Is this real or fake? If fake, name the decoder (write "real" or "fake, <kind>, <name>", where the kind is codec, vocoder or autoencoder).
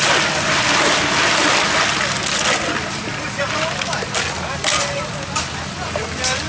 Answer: real